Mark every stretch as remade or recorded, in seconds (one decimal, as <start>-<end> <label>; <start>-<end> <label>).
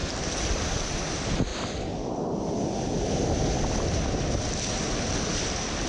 0.0-5.9 recorded